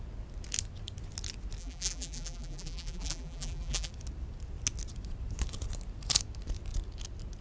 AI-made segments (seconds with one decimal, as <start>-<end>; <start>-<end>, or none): 1.6-3.9